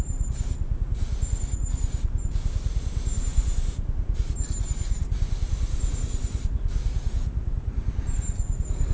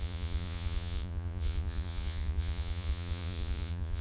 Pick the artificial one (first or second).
second